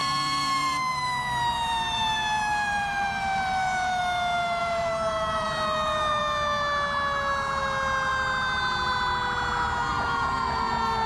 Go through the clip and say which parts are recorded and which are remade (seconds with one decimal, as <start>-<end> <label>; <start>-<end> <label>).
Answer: 0.0-4.0 remade; 4.0-4.6 recorded; 4.6-6.2 remade; 6.2-9.9 recorded; 9.9-10.7 remade; 10.7-11.1 recorded